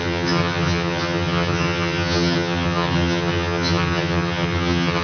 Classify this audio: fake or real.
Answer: fake